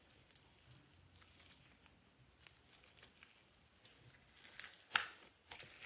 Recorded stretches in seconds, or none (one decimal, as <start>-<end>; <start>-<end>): 0.0-5.9